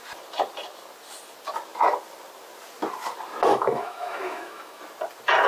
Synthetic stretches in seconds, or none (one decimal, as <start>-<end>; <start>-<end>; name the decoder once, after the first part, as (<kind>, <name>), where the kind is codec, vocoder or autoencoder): 3.5-4.8 (autoencoder, DAC-VAE)